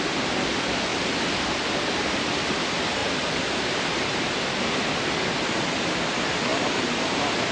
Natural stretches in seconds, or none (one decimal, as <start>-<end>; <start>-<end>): 0.0-0.9; 2.3-3.0; 4.9-6.5; 7.0-7.5